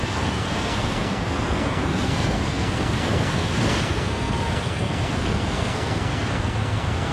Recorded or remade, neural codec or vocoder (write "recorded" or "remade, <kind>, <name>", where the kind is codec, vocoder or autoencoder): remade, codec, SNAC